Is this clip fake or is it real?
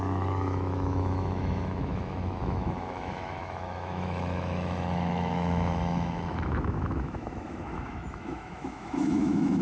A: fake